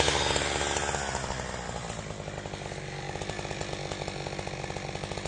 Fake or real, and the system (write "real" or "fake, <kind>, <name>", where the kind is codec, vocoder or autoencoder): real